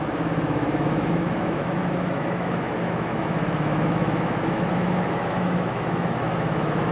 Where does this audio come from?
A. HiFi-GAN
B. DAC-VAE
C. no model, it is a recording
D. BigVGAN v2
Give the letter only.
B